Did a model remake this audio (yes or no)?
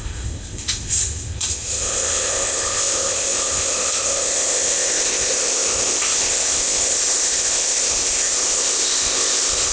yes